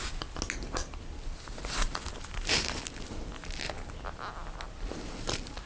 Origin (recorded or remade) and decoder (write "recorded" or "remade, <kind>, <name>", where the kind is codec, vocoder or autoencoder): recorded